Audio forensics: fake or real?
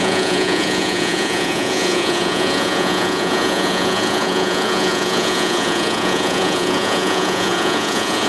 fake